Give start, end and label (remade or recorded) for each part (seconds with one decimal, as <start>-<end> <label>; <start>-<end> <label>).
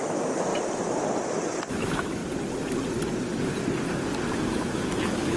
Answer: 0.0-0.5 remade; 0.5-1.7 recorded; 1.7-2.2 remade; 2.2-4.4 recorded; 4.4-5.4 remade